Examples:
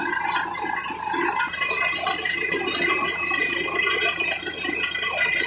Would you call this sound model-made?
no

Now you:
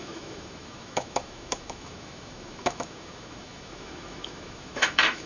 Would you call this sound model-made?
yes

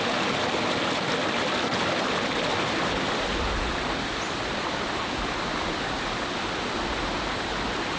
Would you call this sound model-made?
no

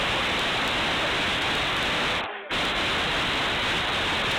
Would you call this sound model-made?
no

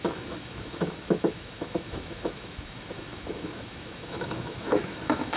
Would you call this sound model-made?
yes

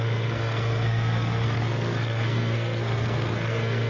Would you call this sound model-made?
yes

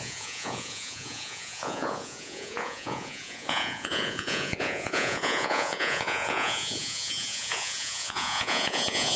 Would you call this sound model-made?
yes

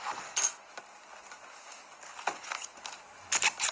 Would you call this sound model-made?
no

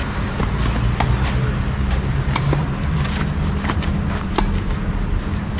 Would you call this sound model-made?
yes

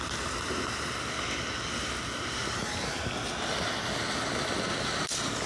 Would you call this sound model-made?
no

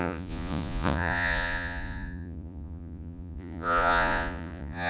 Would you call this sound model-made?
yes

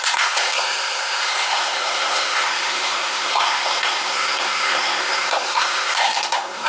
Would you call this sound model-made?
yes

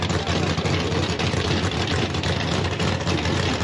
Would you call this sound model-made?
no